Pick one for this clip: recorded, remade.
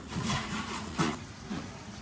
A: remade